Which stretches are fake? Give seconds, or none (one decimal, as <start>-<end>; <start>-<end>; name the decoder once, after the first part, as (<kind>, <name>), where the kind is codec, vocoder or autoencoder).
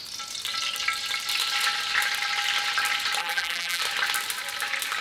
3.2-3.8 (vocoder, BigVGAN v2)